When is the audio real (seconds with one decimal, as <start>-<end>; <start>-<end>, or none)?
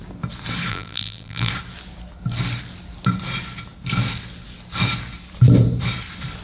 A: 0.0-0.7; 1.5-6.4